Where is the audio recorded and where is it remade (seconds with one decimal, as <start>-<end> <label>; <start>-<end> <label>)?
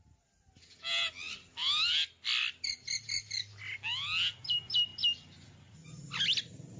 0.0-6.8 recorded